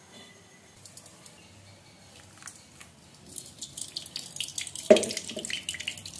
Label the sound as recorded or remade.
recorded